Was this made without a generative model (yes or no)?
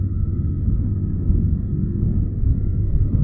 no